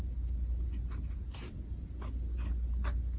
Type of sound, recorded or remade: recorded